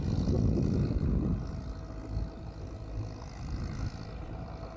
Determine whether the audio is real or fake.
real